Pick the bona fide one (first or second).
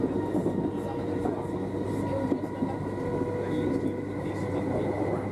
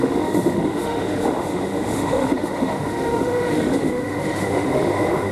first